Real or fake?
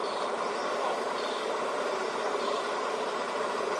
fake